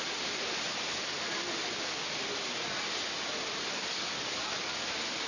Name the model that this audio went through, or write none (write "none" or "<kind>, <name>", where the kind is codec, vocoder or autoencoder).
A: none